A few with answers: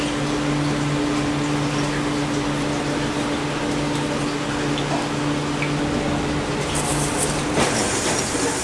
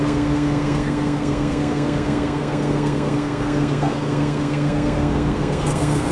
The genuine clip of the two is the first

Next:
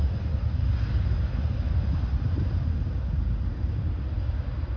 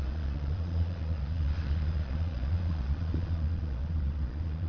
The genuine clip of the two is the first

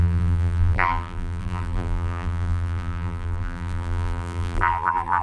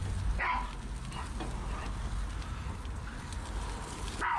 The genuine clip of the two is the second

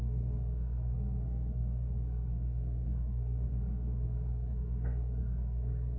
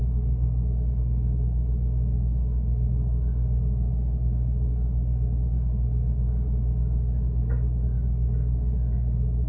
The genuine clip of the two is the second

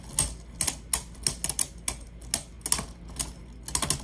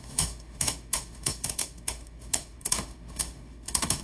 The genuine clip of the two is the first